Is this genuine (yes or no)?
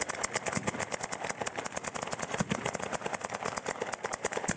yes